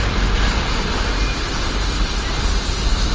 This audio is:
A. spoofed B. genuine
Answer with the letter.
B